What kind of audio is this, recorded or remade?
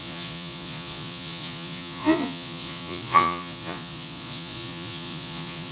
remade